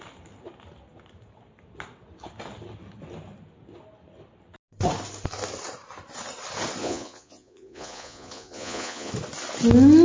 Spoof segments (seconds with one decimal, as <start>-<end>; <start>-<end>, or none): 6.8-9.1